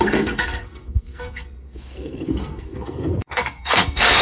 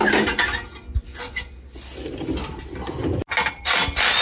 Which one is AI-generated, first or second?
first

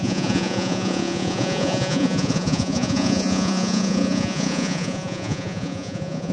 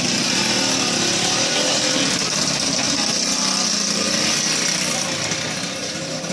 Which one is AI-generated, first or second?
first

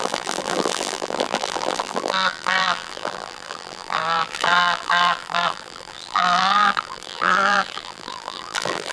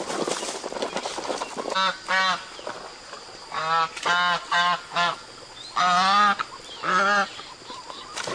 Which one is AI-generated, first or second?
first